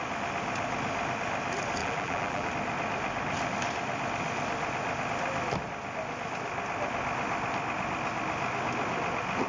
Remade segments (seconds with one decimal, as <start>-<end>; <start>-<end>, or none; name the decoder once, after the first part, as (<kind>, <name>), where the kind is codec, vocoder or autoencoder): 1.8-2.5 (vocoder, BigVGAN v2)